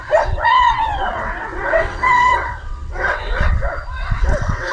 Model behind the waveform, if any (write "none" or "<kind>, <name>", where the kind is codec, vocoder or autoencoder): vocoder, WaveNeXt